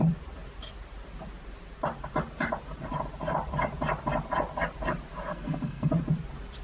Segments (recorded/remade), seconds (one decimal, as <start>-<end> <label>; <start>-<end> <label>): 0.0-5.3 recorded; 5.3-5.9 remade; 5.9-6.6 recorded